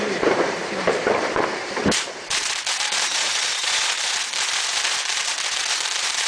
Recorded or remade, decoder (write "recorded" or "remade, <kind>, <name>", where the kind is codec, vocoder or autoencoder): remade, vocoder, BigVGAN v2